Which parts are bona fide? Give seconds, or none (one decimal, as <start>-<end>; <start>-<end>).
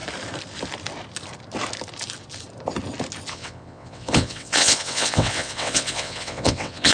0.0-3.3